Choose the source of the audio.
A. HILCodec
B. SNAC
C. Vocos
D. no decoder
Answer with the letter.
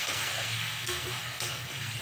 B